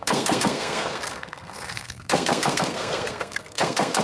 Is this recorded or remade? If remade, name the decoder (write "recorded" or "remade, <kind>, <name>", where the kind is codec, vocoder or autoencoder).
remade, codec, SNAC